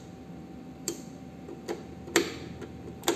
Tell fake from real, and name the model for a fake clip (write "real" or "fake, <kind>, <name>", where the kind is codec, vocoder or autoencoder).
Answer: real